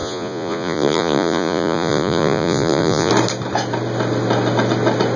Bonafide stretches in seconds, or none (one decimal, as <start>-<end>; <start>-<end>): 3.1-5.2